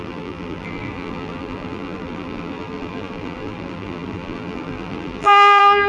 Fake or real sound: fake